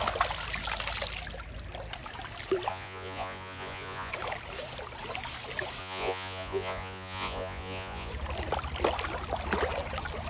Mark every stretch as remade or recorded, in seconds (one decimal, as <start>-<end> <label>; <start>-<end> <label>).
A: 0.0-2.7 recorded; 2.7-4.1 remade; 4.1-5.8 recorded; 5.8-8.1 remade; 8.1-10.3 recorded